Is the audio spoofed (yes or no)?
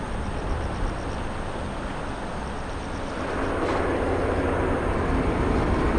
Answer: no